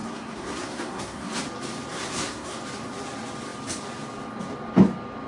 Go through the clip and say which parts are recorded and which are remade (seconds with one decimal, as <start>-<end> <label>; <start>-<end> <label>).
0.0-1.4 remade; 1.4-1.9 recorded; 1.9-2.6 remade; 2.6-5.3 recorded